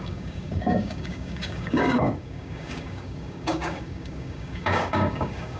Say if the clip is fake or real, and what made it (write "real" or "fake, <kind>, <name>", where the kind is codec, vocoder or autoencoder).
fake, codec, DAC